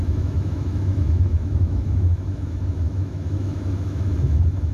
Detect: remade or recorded remade